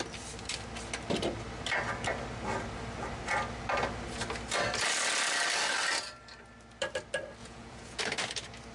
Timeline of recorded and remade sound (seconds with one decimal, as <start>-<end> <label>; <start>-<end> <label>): 0.0-7.4 recorded; 7.4-8.0 remade; 8.0-8.7 recorded